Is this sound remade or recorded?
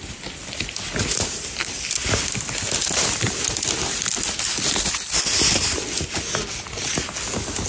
recorded